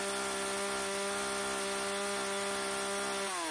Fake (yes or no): no